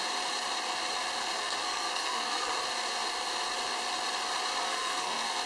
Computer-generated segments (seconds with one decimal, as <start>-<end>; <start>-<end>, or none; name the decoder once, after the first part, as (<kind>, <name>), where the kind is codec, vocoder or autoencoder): 1.4-2.5 (codec, SNAC); 4.6-5.5